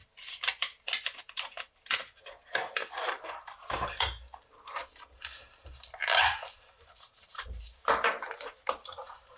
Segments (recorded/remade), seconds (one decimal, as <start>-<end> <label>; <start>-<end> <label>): 0.0-9.4 remade